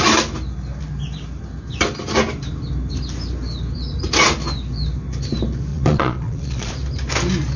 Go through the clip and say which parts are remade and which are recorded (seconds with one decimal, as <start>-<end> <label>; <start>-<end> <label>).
0.0-5.7 recorded; 5.7-6.7 remade; 6.7-7.6 recorded